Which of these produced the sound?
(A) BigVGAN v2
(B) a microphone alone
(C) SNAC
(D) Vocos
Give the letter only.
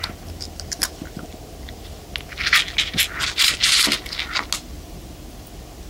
B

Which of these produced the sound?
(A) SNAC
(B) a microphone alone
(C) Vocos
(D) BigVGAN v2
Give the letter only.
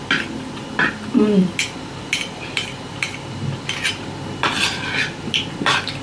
B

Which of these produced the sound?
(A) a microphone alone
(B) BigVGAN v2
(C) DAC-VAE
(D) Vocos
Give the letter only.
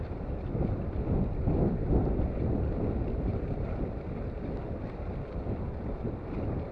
A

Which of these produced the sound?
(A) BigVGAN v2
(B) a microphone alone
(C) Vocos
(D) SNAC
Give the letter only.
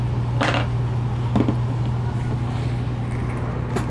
B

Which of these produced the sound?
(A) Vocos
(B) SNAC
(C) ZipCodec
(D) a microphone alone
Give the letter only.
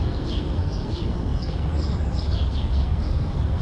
B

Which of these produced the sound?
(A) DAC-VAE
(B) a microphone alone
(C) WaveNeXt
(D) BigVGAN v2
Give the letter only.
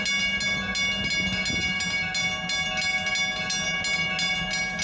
B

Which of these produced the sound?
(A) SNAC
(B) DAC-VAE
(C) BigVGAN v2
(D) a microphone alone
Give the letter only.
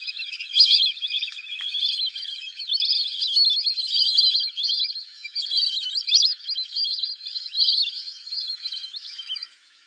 B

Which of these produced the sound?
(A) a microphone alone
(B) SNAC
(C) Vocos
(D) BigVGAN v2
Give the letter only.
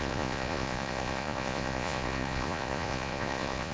C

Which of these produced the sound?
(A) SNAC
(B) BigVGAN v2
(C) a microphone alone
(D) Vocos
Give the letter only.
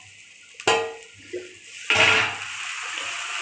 C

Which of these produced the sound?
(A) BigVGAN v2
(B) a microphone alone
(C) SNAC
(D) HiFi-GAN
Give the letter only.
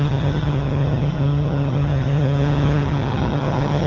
D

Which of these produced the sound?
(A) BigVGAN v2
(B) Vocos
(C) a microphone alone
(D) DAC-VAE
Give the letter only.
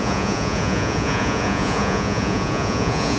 B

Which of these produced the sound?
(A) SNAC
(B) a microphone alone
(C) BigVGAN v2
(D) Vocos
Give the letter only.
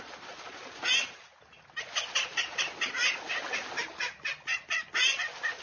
B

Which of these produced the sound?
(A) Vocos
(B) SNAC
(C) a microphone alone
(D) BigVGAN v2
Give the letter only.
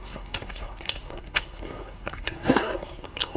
B